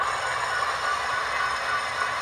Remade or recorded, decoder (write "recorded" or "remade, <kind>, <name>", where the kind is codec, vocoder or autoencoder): recorded